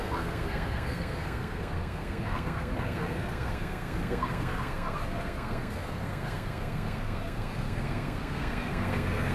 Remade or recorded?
remade